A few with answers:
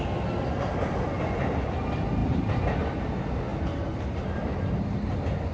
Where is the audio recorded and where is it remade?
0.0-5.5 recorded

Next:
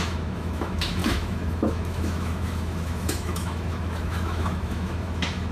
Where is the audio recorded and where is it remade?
0.0-5.5 remade